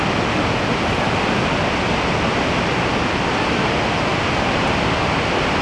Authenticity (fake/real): real